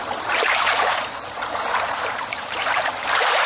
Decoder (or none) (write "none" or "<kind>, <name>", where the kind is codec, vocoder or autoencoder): vocoder, BigVGAN v2